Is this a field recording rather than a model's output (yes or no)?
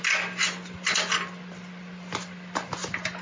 yes